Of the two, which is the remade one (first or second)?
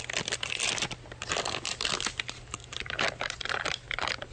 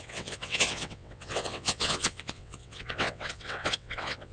second